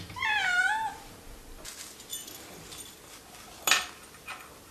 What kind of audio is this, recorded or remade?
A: recorded